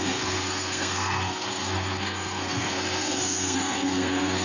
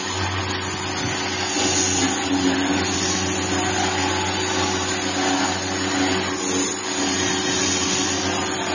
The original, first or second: second